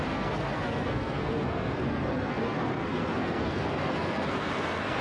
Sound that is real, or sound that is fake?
fake